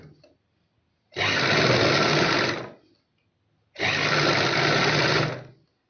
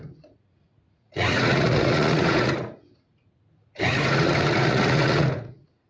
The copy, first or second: second